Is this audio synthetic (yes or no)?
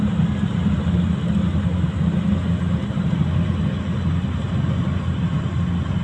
no